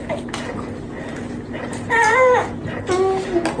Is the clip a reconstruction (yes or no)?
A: no